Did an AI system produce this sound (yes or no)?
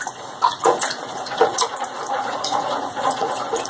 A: yes